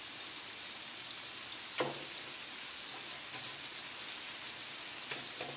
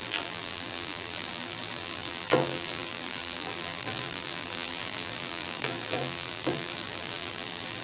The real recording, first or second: first